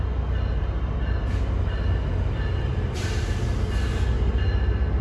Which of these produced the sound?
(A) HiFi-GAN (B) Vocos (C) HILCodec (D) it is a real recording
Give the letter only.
D